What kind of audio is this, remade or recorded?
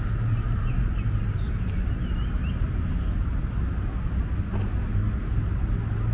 recorded